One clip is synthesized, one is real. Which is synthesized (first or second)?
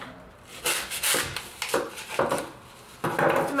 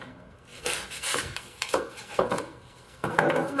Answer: second